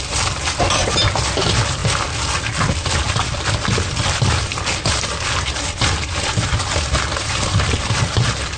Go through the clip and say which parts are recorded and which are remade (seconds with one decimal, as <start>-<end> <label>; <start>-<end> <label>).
0.0-8.6 recorded